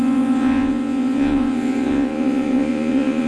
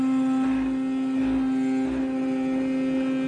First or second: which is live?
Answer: second